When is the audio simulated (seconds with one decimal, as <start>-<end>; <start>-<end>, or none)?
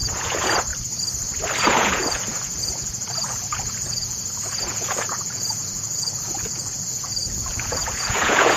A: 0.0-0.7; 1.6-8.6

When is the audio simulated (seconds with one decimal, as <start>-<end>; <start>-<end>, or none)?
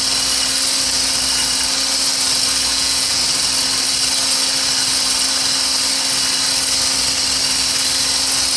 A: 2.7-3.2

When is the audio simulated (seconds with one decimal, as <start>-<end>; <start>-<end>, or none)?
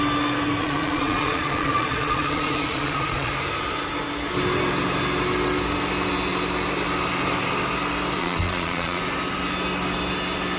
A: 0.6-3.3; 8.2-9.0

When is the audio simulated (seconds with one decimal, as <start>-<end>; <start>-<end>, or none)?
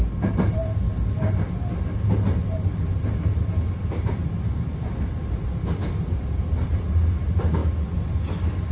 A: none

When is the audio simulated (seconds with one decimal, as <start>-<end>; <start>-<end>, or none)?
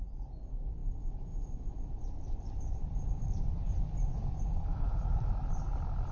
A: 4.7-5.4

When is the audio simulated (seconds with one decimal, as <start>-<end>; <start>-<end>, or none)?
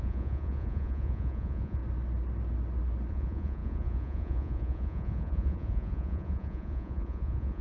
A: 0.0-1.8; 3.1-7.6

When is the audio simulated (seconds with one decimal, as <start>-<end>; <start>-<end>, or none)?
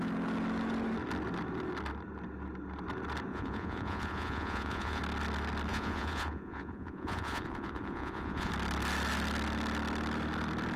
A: 3.3-5.0; 5.7-8.5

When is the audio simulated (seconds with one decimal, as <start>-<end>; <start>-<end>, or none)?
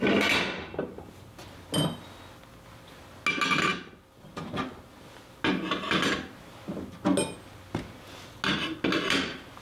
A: none